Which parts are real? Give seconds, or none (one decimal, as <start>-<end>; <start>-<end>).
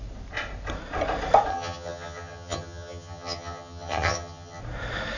0.0-1.5; 4.6-5.2